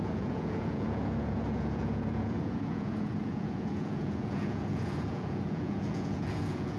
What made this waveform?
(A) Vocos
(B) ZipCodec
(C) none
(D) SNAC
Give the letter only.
A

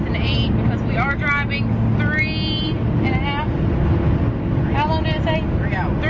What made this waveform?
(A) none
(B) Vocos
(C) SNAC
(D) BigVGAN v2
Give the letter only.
A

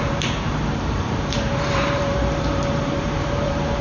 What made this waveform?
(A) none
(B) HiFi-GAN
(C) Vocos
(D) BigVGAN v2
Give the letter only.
D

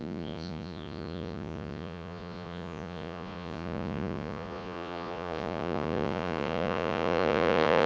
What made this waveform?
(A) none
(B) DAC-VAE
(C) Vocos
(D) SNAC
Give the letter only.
C